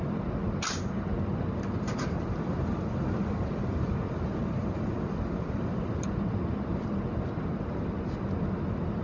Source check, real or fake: real